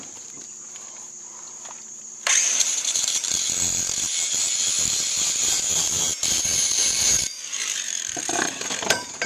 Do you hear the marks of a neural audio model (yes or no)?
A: yes